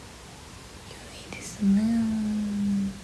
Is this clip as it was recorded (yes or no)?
yes